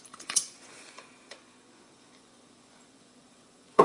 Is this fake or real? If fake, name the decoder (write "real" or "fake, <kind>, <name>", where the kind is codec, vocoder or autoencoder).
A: fake, vocoder, Vocos